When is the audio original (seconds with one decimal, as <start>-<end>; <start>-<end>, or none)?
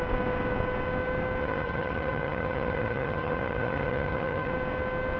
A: 0.0-1.4; 4.5-5.2